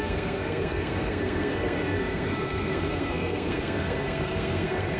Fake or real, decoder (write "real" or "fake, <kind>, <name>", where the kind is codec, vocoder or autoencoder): fake, codec, SNAC